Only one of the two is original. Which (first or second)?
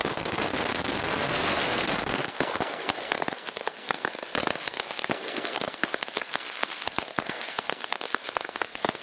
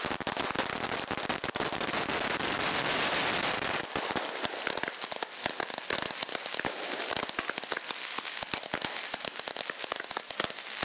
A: second